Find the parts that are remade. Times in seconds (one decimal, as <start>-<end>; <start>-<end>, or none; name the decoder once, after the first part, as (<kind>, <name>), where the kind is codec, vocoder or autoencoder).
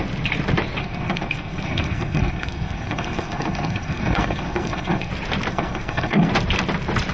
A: 0.8-5.1 (codec, SNAC); 5.5-6.3